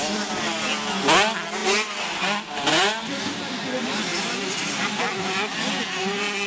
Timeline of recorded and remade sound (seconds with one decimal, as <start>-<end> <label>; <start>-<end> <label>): 0.0-6.5 recorded